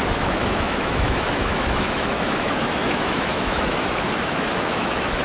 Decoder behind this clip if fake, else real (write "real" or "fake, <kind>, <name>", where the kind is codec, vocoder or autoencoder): fake, autoencoder, DAC-VAE